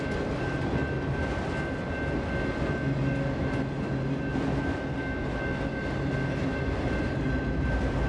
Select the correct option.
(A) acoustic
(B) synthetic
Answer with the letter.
A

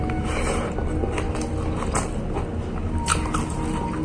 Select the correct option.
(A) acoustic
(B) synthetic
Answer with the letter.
A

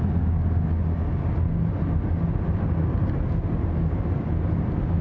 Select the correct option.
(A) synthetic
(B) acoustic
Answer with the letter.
B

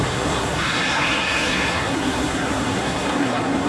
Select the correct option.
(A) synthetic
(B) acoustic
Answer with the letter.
A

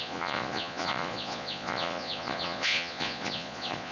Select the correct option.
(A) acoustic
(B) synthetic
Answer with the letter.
B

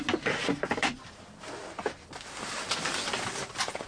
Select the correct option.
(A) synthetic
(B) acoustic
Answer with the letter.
B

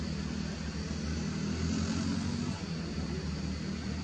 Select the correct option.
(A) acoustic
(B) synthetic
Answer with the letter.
A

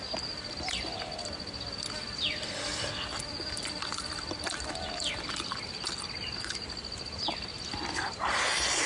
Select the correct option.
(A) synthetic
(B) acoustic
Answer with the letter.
B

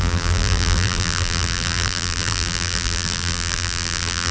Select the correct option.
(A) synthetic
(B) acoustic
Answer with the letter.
A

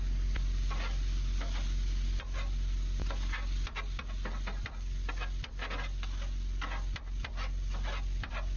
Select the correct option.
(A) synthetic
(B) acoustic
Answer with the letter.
B